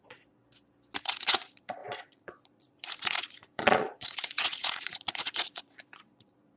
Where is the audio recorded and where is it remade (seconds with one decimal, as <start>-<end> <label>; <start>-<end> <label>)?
0.0-0.4 remade; 0.4-1.0 recorded; 1.0-6.6 remade